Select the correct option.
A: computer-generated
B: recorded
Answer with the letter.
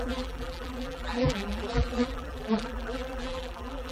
A